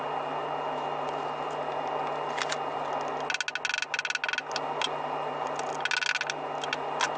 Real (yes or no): yes